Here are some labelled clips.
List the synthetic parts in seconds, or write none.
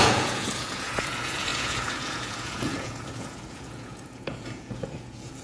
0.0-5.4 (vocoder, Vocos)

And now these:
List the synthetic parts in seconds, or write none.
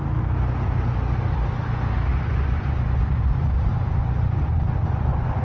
2.1-5.4 (vocoder, Vocos)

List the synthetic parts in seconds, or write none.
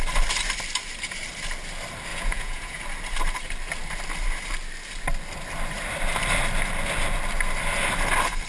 2.1-2.8 (vocoder, Vocos)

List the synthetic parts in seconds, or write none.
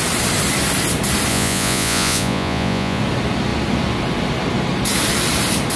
1.3-3.0 (vocoder, Vocos)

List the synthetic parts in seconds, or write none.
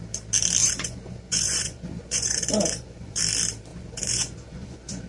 0.6-3.2 (vocoder, Vocos); 3.7-5.1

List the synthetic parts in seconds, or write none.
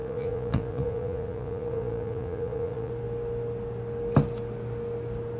0.0-2.9 (vocoder, Vocos)